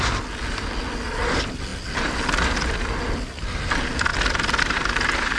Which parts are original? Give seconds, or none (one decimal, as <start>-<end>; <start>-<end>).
0.0-5.4